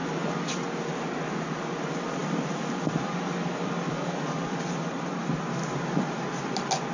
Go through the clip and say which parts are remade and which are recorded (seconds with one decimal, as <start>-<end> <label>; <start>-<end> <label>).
0.0-2.2 recorded; 2.2-5.9 remade; 5.9-6.9 recorded